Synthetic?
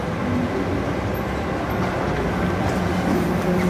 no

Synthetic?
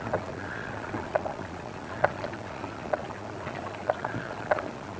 yes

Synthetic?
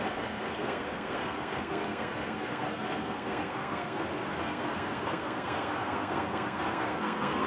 yes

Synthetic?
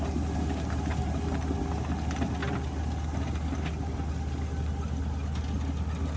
no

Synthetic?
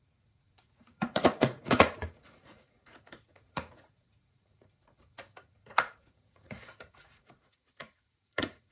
yes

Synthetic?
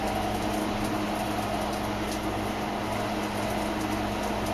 no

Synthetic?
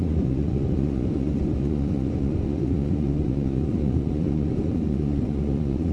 yes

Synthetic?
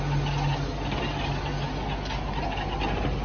no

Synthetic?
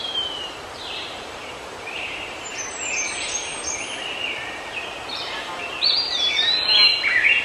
yes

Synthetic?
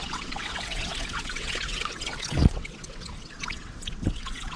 yes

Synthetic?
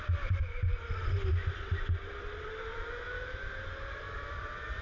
no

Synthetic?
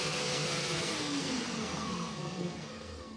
yes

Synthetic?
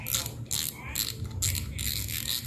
no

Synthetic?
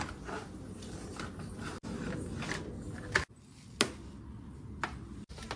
no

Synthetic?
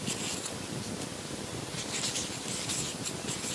no